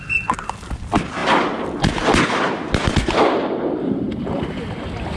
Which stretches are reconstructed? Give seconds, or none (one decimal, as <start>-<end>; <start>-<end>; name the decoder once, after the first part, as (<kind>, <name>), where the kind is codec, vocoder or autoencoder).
none